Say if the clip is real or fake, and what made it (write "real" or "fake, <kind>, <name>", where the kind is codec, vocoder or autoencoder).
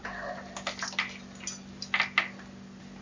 real